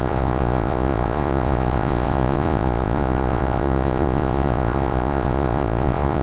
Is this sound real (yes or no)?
no